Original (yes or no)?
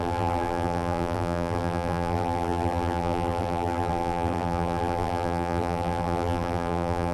no